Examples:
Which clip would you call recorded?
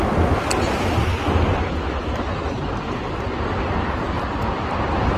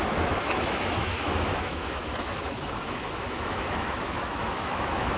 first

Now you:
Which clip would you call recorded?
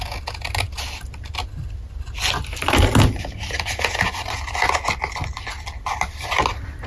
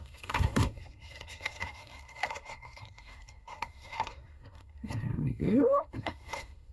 first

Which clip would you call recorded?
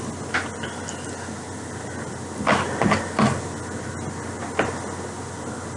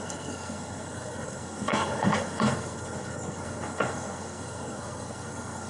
first